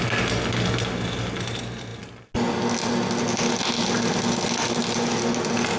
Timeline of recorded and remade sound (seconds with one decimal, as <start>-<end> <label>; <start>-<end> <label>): 0.0-5.8 recorded